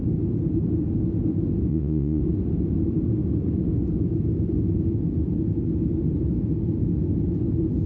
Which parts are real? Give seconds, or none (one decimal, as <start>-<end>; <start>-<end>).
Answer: 0.0-1.7; 2.2-7.9